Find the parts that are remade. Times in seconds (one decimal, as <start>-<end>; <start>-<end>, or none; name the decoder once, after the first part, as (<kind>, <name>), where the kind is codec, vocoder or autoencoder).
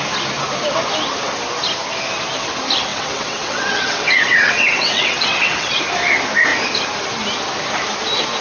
2.9-5.8 (vocoder, WaveNeXt)